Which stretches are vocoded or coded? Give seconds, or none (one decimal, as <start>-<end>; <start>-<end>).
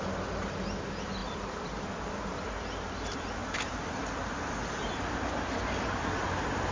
1.2-2.3; 3.4-6.3